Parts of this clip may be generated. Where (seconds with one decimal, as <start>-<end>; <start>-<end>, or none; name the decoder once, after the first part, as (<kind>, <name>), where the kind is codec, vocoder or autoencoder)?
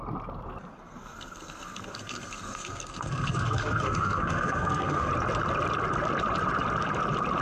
0.7-5.1 (codec, SNAC)